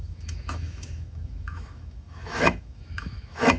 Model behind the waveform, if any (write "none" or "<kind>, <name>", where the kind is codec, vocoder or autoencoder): autoencoder, DAC-VAE